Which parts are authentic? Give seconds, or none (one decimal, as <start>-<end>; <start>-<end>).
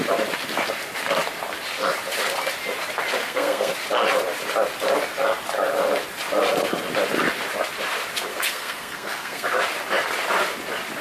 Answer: 0.0-3.2; 3.7-8.3; 9.5-11.0